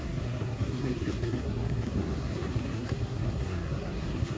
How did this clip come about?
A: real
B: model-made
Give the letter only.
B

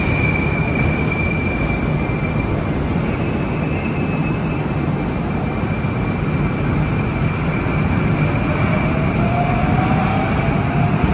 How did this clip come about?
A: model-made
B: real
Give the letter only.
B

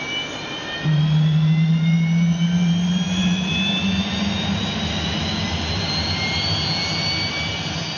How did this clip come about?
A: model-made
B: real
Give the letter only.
B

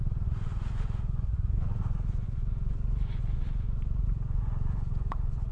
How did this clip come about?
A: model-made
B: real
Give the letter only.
A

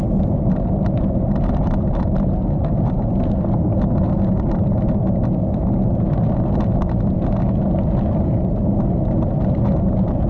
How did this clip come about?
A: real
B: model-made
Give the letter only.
A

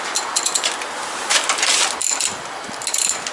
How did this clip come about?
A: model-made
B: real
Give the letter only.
B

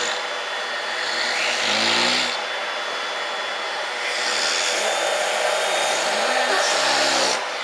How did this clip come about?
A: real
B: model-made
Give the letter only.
A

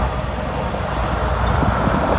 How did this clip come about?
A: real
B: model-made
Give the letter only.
A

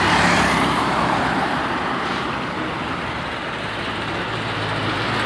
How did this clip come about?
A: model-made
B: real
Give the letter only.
A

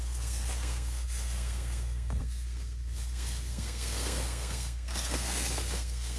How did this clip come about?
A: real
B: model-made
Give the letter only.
B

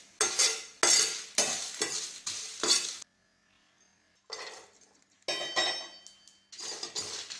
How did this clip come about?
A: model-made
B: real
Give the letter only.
B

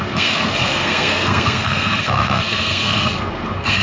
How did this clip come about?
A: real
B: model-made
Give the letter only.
B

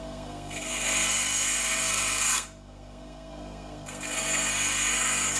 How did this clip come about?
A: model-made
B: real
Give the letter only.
A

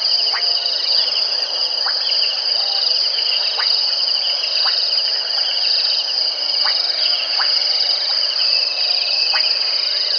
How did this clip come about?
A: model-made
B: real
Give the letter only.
B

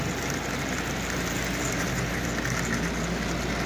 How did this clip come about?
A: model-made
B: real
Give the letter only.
B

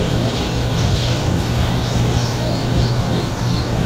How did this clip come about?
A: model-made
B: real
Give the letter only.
A